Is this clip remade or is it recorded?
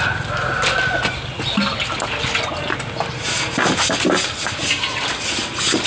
recorded